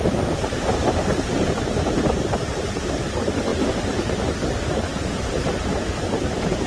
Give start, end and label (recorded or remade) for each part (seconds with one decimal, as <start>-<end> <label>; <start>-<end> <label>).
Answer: 0.0-6.7 remade